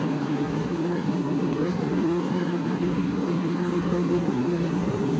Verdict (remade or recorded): remade